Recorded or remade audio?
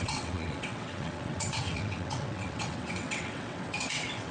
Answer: remade